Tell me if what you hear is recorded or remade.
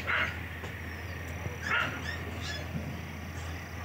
recorded